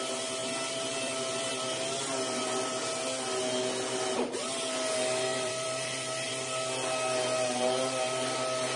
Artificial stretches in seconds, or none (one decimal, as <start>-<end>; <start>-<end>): 0.4-2.0; 5.3-6.3